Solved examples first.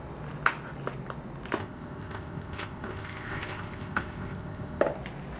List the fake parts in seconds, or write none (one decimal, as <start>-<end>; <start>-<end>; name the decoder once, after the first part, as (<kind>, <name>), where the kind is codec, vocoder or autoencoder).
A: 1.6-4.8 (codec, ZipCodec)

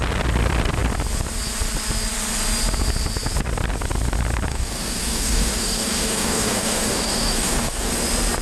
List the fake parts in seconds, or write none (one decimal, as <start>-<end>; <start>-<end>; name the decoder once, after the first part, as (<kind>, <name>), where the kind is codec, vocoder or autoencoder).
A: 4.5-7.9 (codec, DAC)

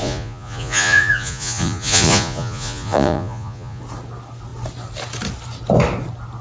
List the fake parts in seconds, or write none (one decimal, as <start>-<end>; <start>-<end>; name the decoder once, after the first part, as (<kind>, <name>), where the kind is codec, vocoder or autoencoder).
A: 0.0-3.8 (vocoder, Vocos)

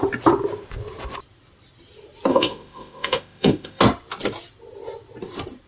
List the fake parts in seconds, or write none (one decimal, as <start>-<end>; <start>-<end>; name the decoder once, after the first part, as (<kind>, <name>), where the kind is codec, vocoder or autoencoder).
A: 2.3-3.8 (autoencoder, DAC-VAE)

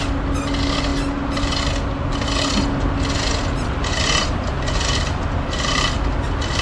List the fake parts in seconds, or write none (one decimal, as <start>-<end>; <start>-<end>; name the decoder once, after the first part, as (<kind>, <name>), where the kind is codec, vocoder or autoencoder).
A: none